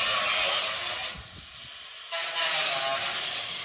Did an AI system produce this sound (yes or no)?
no